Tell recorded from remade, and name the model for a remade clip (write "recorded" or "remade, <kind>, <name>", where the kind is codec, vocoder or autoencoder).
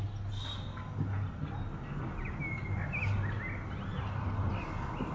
recorded